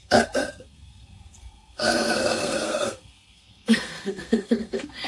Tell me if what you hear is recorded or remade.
remade